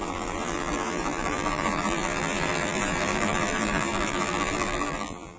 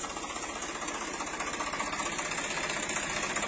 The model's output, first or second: first